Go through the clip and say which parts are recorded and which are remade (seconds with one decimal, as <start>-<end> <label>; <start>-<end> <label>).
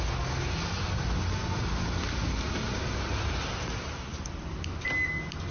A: 0.0-5.5 recorded